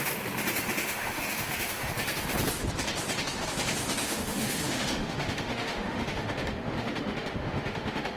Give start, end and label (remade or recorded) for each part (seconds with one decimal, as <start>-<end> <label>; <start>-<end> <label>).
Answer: 0.0-0.8 recorded; 0.8-1.9 remade; 1.9-4.0 recorded; 4.0-8.2 remade

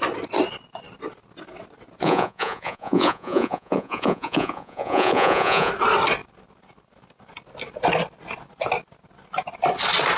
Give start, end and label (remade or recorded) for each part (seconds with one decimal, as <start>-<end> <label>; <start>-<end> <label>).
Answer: 0.0-2.0 recorded; 2.0-5.7 remade; 5.7-10.2 recorded

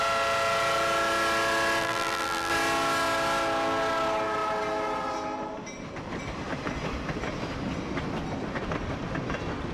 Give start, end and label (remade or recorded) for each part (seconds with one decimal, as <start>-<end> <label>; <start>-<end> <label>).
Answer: 0.0-1.8 recorded; 1.8-2.5 remade; 2.5-9.7 recorded

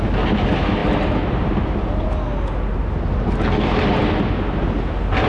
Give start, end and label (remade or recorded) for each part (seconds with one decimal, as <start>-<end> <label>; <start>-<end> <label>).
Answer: 0.0-5.3 recorded

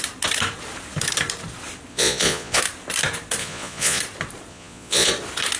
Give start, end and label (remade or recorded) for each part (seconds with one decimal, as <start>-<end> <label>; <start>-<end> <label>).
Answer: 0.0-1.9 recorded; 1.9-2.6 remade; 2.6-3.4 recorded; 3.4-4.0 remade; 4.0-4.5 recorded; 4.5-5.1 remade; 5.1-5.6 recorded

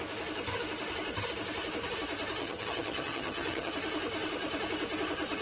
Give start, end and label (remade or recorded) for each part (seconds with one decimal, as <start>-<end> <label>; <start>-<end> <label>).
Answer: 0.0-2.4 recorded; 2.4-3.7 remade; 3.7-5.4 recorded

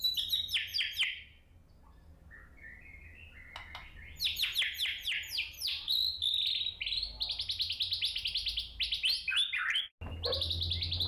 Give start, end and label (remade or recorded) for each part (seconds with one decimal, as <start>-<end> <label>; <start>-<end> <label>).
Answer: 0.0-4.8 recorded; 4.8-5.9 remade; 5.9-11.1 recorded